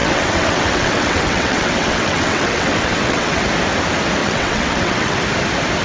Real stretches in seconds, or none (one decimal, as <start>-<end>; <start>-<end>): 3.4-4.2; 5.2-5.8